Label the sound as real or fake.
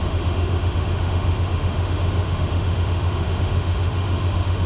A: fake